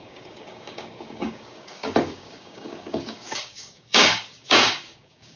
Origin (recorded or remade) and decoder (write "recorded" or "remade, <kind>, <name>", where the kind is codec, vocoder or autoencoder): remade, codec, DAC